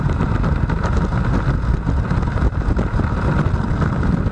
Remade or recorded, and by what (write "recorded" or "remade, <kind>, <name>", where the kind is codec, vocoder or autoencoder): recorded